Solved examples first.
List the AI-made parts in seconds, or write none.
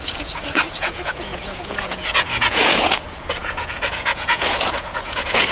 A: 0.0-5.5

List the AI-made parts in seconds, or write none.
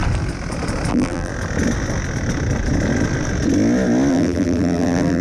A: 0.9-1.3; 4.1-5.2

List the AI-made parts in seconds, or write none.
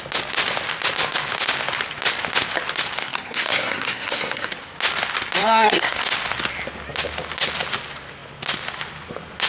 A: 3.0-4.5; 5.4-6.0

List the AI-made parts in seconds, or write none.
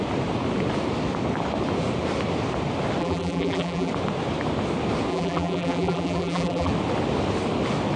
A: 3.0-3.9; 5.1-6.7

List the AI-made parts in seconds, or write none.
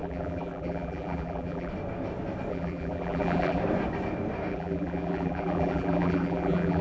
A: 0.0-1.7; 2.5-3.6; 4.5-6.8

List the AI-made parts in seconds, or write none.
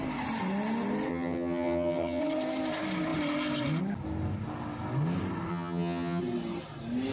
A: 1.1-2.2; 5.5-6.2